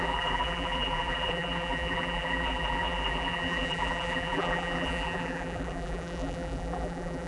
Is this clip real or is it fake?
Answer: fake